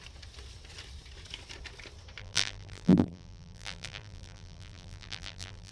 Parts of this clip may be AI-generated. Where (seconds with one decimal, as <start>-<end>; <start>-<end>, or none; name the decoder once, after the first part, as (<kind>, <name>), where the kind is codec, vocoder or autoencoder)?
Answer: 2.2-5.7 (vocoder, BigVGAN v2)